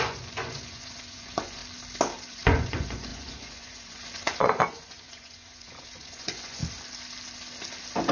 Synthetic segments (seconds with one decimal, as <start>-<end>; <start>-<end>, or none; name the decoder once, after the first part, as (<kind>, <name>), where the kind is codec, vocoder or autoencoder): 0.0-1.6 (vocoder, Vocos); 2.3-6.6